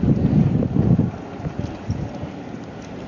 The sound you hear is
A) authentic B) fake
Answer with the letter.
A